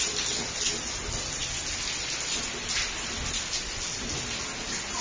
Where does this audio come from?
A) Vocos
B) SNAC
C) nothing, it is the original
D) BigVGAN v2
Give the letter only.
C